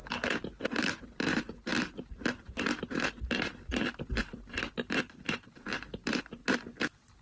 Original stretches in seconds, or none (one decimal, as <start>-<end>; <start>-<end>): 0.0-0.8; 6.4-7.2